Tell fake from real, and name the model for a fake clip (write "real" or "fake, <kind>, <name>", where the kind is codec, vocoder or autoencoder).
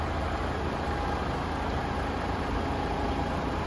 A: fake, vocoder, BigVGAN v2